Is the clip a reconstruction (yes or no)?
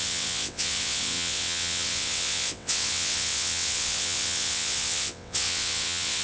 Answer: yes